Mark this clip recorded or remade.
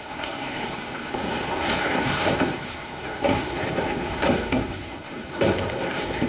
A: remade